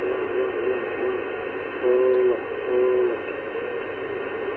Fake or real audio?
real